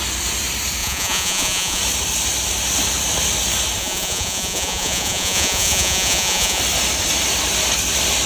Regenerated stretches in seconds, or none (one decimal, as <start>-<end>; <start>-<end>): 0.8-1.8; 3.8-6.6